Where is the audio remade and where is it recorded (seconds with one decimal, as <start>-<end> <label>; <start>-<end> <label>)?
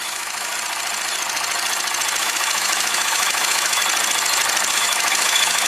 0.0-0.5 remade; 0.5-2.2 recorded; 2.2-3.8 remade; 3.8-4.7 recorded; 4.7-5.7 remade